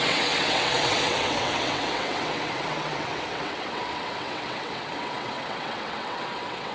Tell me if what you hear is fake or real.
fake